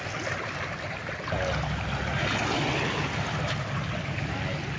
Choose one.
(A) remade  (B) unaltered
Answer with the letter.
B